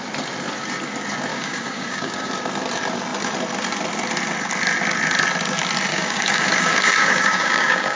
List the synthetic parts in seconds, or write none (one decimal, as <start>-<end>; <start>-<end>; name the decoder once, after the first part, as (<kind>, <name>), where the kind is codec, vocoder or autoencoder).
1.3-2.3 (codec, DAC); 5.9-8.0